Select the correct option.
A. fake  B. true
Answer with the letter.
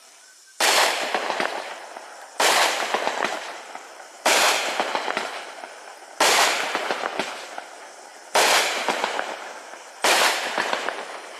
A